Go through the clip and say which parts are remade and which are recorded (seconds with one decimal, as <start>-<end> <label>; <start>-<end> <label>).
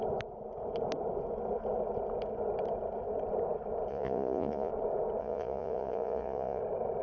0.0-3.9 recorded; 3.9-4.7 remade; 4.7-5.2 recorded; 5.2-6.6 remade; 6.6-7.0 recorded